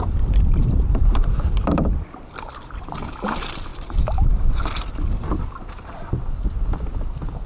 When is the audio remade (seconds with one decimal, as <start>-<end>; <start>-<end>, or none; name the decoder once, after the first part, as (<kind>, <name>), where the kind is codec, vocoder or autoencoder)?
0.0-3.7 (vocoder, BigVGAN v2); 5.6-7.5